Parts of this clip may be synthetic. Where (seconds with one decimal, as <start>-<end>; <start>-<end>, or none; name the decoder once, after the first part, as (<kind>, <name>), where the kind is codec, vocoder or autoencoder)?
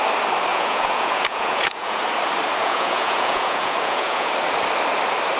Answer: 0.5-2.0 (vocoder, Vocos); 2.6-4.3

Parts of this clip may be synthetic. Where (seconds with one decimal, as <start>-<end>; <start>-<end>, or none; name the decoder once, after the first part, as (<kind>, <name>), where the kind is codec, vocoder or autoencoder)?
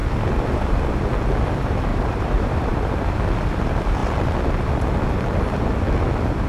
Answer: 1.9-2.9 (vocoder, BigVGAN v2)